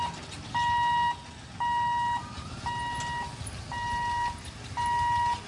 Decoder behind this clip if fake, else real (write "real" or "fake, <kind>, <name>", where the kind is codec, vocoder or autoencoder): real